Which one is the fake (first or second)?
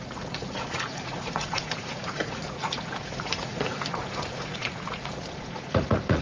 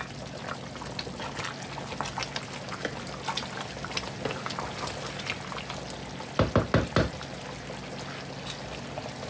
first